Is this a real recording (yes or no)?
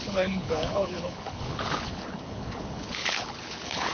no